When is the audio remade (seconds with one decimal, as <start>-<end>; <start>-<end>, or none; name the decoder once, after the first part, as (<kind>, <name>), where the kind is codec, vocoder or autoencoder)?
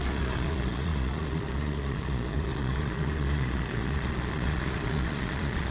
0.0-5.7 (vocoder, Vocos)